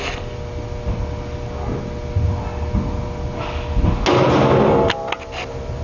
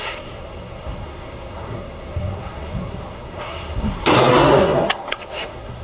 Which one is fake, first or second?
second